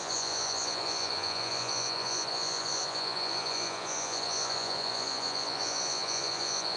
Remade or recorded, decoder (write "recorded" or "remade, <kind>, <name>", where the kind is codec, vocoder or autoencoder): remade, vocoder, Vocos